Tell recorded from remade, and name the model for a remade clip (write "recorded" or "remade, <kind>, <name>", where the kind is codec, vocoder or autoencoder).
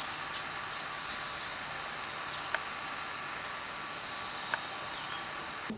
recorded